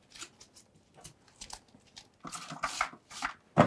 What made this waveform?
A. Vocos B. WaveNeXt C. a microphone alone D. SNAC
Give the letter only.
C